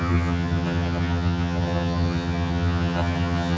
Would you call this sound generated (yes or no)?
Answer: yes